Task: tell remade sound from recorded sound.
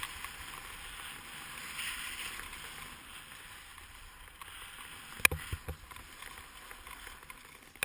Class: recorded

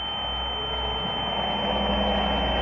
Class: recorded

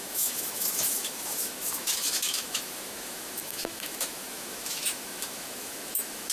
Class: remade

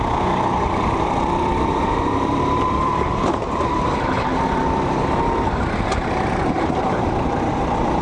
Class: remade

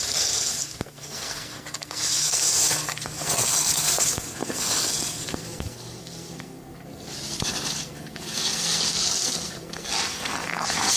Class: remade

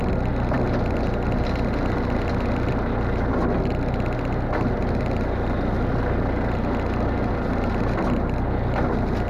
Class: recorded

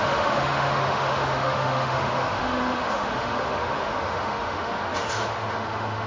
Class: remade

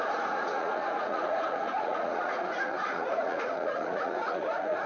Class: remade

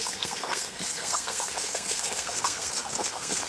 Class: remade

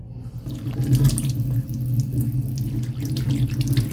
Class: recorded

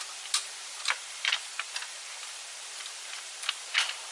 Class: remade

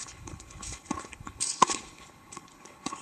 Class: remade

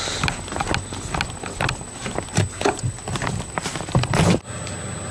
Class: recorded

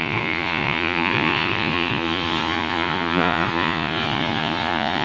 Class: remade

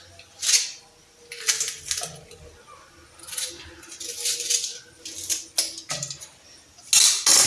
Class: recorded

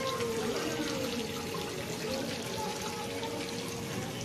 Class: recorded